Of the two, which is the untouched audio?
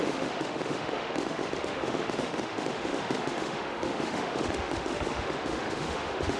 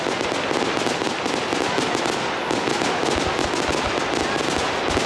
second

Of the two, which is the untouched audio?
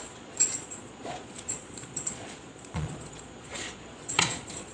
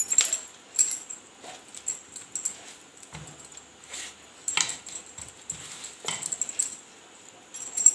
second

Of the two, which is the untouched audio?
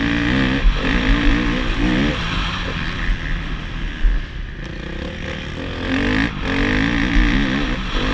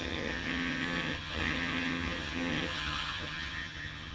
first